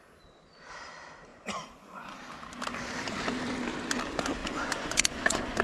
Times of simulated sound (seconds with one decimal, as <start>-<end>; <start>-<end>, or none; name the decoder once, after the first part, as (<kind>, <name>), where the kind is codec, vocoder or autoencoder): 1.3-2.2 (vocoder, Vocos); 4.4-5.6